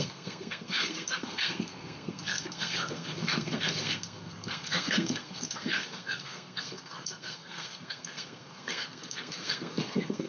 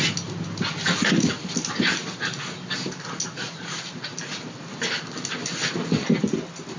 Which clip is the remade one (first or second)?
first